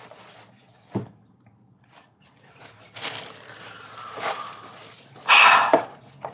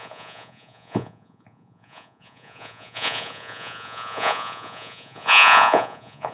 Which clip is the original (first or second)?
first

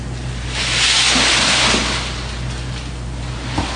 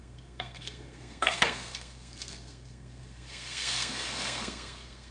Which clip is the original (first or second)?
first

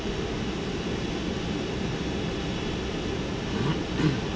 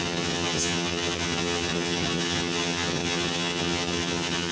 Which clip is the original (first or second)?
first